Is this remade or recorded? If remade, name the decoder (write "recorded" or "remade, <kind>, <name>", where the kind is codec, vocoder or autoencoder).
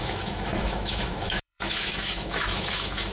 remade, autoencoder, DAC-VAE